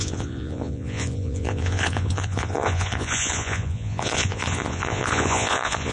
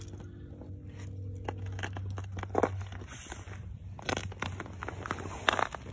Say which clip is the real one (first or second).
second